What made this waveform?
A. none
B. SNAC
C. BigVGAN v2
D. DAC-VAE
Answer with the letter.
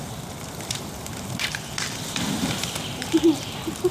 C